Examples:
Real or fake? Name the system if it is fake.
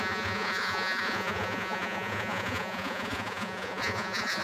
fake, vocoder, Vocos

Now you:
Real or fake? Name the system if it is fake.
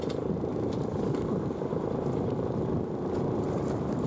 real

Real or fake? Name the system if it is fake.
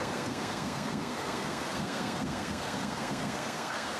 fake, codec, SNAC